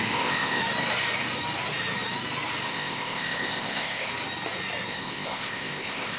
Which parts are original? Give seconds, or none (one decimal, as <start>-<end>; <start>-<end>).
0.6-2.7; 4.1-4.9